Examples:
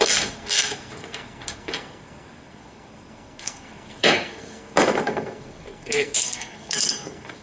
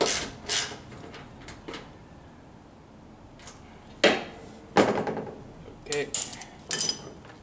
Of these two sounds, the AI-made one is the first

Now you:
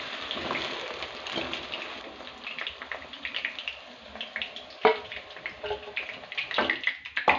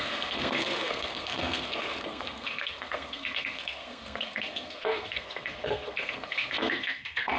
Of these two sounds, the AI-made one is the second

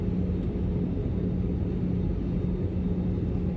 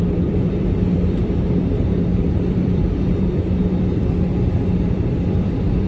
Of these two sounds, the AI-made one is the second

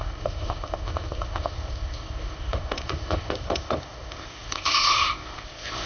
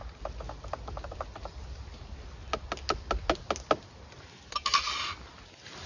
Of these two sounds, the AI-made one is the first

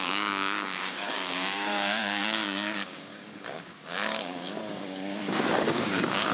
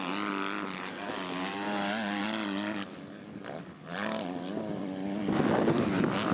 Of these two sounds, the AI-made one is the first